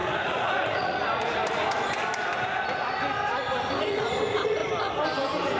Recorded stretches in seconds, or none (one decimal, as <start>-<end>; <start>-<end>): 1.4-3.7; 4.6-5.6